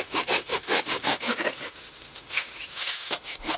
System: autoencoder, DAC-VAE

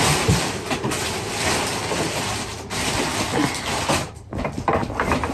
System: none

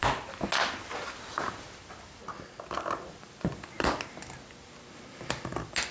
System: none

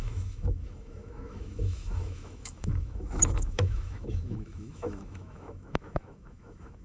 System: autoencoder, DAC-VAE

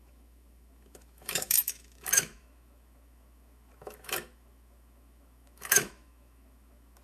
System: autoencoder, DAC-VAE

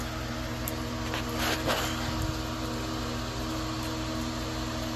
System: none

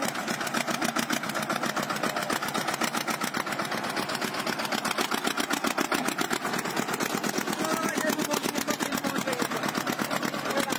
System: none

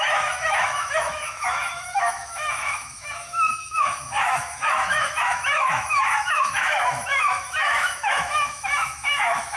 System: autoencoder, DAC-VAE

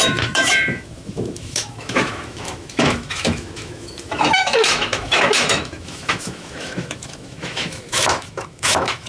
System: autoencoder, DAC-VAE